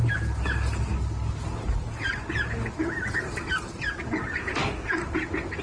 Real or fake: real